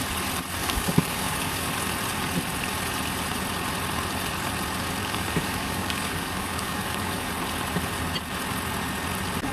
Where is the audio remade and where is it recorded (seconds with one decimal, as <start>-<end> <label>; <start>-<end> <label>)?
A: 0.0-0.6 recorded; 0.6-1.7 remade; 1.7-5.0 recorded; 5.0-7.3 remade; 7.3-9.5 recorded